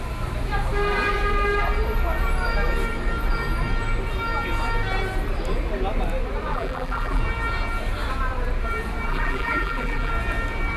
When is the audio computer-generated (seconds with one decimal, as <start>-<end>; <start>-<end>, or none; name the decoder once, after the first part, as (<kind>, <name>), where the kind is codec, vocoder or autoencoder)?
6.5-7.2 (vocoder, BigVGAN v2); 9.1-10.1